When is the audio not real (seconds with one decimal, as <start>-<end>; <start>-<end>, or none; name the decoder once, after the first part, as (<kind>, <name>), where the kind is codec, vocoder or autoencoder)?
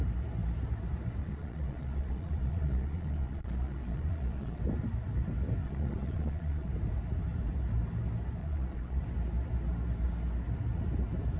1.2-4.6 (vocoder, Vocos); 5.6-6.7; 8.4-9.0